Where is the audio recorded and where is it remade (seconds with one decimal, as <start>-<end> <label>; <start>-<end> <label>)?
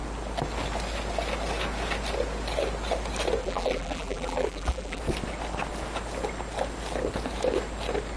0.0-3.4 recorded; 3.4-5.0 remade; 5.0-8.2 recorded